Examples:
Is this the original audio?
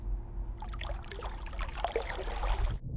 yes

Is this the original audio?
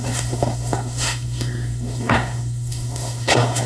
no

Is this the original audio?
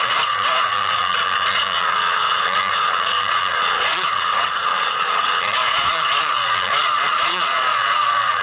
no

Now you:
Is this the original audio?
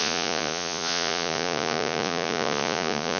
no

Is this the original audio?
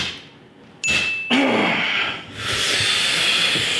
yes